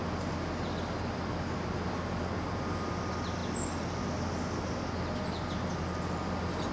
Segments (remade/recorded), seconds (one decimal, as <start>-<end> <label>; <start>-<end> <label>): 0.0-6.7 recorded